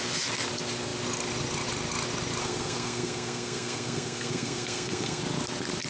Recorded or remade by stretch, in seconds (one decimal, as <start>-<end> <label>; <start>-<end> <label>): 0.0-2.4 recorded; 2.4-5.2 remade; 5.2-5.9 recorded